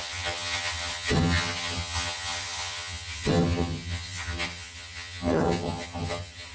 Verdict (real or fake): fake